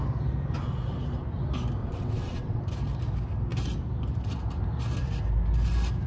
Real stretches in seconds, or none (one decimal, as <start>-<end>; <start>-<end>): 0.0-1.8; 2.6-6.1